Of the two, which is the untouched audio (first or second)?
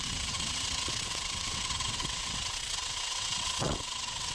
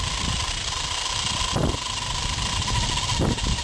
second